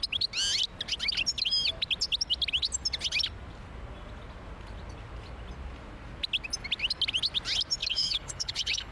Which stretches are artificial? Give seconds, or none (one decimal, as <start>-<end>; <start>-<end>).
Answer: 7.8-8.9